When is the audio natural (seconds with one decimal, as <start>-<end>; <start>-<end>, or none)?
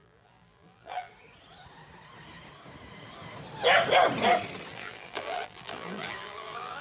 1.1-4.7